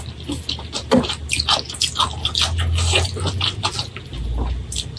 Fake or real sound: real